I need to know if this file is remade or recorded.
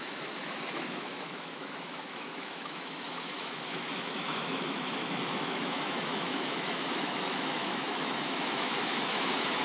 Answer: remade